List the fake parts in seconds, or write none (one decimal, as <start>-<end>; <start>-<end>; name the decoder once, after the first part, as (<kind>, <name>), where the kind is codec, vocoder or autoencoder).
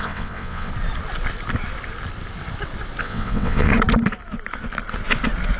0.0-0.7 (vocoder, WaveNeXt); 3.0-3.7